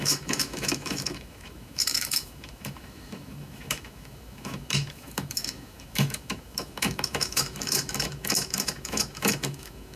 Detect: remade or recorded remade